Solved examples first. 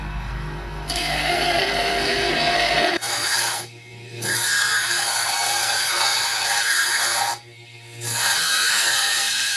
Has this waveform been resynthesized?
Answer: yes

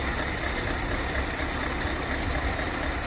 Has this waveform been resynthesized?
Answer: no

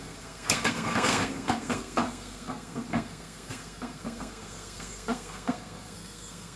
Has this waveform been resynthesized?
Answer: yes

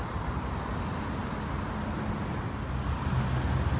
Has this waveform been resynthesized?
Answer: no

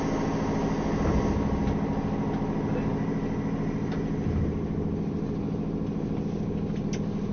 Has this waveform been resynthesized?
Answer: no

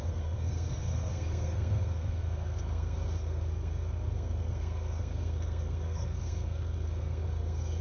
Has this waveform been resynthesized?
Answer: yes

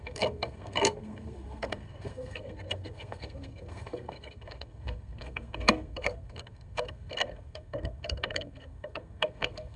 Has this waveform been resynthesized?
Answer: yes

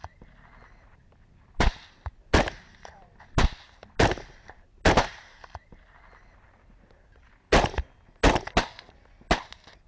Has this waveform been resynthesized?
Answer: no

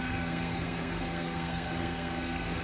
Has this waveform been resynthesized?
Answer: yes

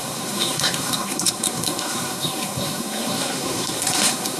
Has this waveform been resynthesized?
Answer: yes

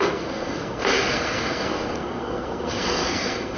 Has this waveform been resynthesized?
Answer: yes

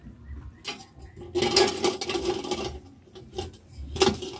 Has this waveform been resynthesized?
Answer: no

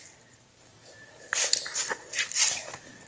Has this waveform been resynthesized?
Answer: no